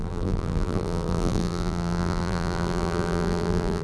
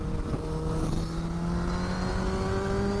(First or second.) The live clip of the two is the second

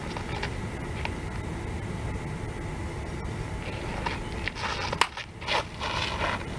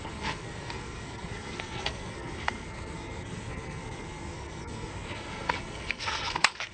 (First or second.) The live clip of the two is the first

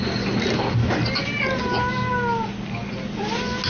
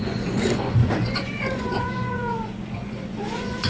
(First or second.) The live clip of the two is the first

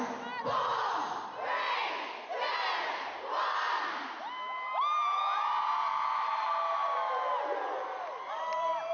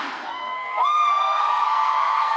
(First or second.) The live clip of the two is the first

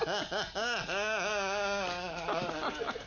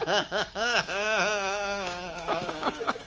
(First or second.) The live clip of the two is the first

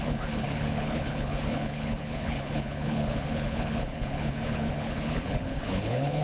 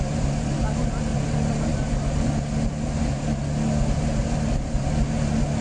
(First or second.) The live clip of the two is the second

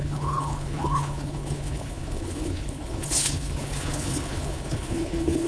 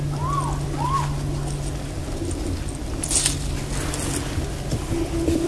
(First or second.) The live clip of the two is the second